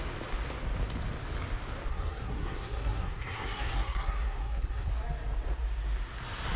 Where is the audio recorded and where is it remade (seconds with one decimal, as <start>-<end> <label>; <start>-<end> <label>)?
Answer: 0.0-1.9 recorded; 1.9-4.9 remade; 4.9-6.6 recorded